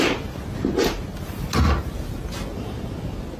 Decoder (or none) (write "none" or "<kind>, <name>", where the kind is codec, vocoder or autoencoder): none